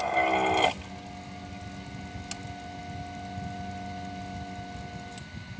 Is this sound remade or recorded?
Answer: recorded